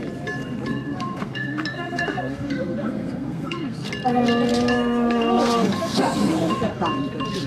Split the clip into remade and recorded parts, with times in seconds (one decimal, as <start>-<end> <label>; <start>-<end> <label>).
0.0-0.7 recorded; 0.7-3.9 remade; 3.9-4.5 recorded; 4.5-6.7 remade; 6.7-7.5 recorded